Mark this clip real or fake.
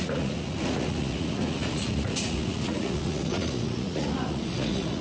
fake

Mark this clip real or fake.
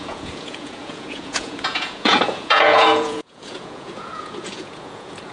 fake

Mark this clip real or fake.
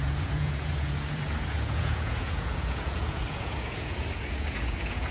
fake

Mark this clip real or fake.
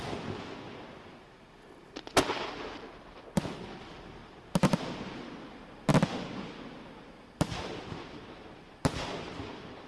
real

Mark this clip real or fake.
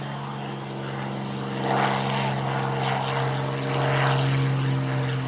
real